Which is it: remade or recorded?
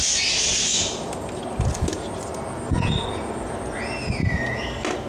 recorded